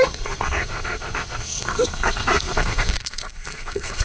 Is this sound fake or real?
fake